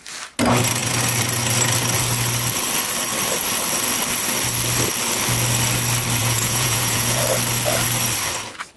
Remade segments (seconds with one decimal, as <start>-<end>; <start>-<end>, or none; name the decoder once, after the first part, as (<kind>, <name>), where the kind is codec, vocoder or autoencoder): 6.2-7.2 (vocoder, Vocos)